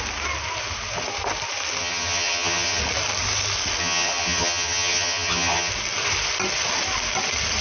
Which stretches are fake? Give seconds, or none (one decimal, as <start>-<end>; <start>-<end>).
1.8-2.8; 3.8-5.7